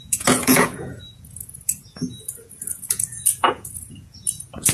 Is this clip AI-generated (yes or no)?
yes